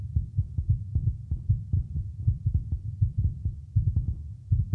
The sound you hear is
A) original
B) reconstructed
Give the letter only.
A